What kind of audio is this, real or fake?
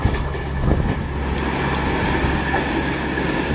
real